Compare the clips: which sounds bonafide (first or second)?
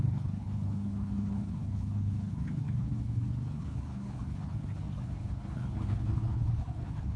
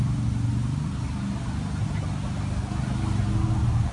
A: second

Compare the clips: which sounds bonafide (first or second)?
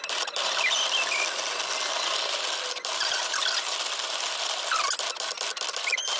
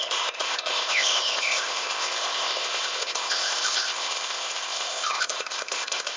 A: first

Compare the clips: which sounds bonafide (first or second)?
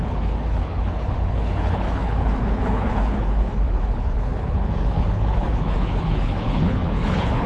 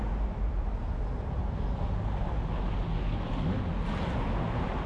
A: second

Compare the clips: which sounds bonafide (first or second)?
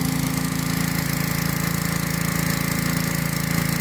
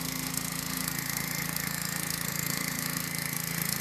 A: first